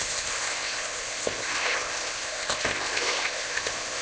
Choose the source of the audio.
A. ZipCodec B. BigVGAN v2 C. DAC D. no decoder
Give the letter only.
A